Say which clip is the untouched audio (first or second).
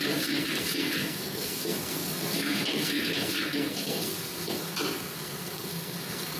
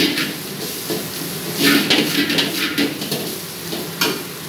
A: second